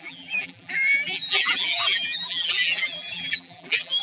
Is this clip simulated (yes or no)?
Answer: yes